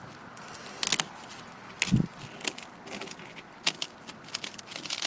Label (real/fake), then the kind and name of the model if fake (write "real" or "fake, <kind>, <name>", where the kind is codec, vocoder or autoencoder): real